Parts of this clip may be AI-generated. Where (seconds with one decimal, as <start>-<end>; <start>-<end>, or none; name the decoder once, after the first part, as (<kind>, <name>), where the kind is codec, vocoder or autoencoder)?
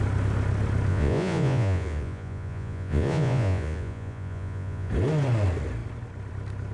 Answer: 0.9-4.9 (vocoder, Vocos)